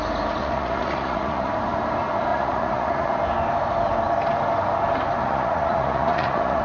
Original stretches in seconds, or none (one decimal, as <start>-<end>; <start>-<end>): 0.0-0.4; 1.5-2.3; 3.1-5.2

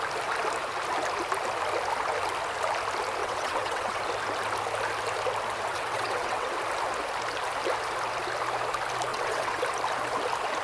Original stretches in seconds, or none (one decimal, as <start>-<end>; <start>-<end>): 0.0-3.2; 4.0-5.7; 6.6-9.1; 9.6-10.6

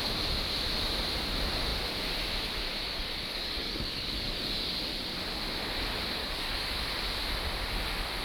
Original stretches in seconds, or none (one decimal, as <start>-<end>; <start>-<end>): 0.0-2.8; 4.8-6.2; 6.8-8.2

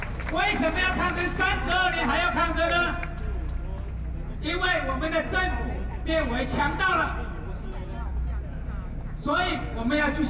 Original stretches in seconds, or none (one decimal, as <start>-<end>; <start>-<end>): 0.0-10.3

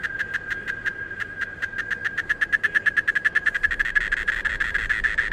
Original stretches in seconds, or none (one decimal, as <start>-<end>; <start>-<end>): 0.0-0.9; 1.6-5.3

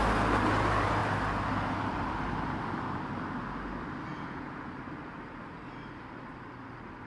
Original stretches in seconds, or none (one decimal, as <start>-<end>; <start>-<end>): 0.0-4.1; 4.7-7.1